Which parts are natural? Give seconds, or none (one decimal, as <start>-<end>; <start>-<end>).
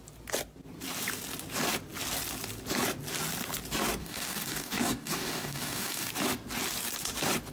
0.0-4.0; 6.1-7.5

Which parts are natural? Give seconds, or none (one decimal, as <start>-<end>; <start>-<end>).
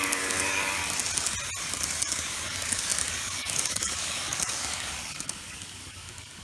0.8-1.7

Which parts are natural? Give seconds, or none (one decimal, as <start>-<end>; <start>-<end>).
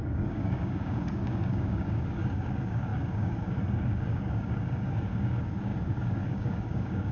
none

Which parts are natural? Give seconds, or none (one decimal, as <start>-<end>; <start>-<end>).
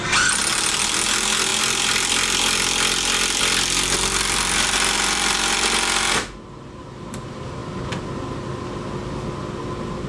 0.0-10.1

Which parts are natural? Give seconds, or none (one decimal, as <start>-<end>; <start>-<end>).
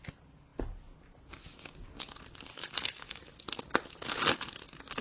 0.0-2.5; 3.3-5.0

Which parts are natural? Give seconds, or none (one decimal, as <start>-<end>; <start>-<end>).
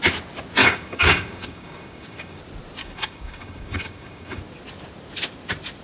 0.0-0.6; 2.4-2.8; 4.4-5.8